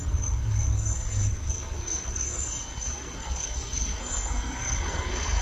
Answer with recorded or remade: remade